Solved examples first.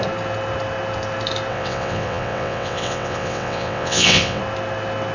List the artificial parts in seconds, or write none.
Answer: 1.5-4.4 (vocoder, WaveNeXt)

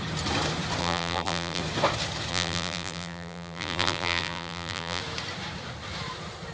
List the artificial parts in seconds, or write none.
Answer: 0.8-1.6 (vocoder, BigVGAN v2); 2.3-5.0

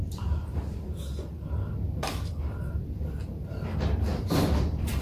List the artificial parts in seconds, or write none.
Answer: 0.0-0.5 (vocoder, BigVGAN v2); 4.1-5.0